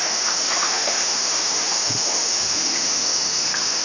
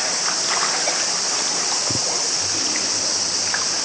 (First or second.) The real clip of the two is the second